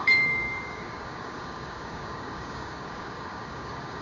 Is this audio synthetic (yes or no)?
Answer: yes